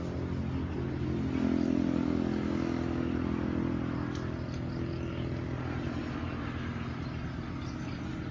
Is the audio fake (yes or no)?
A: no